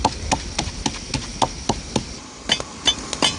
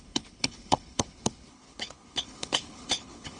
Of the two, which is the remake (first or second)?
second